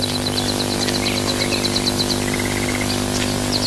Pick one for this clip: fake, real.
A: real